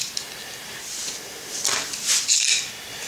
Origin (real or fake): real